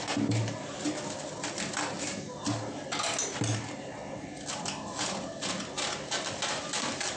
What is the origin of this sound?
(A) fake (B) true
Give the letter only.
B